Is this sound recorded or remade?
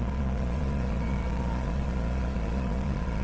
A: remade